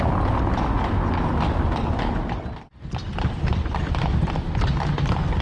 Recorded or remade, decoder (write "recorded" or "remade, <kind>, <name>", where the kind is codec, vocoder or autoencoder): recorded